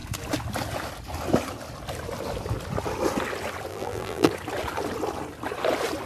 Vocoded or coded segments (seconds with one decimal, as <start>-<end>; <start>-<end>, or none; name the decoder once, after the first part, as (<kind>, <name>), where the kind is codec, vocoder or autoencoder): 3.7-4.3 (vocoder, BigVGAN v2)